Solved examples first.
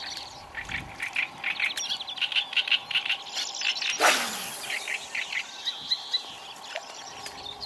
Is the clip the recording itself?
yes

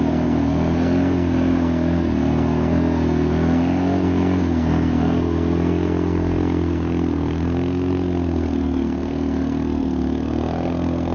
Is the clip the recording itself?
no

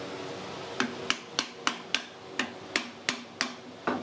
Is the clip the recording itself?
yes